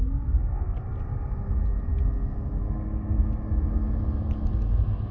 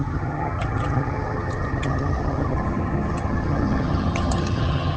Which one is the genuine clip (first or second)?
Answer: first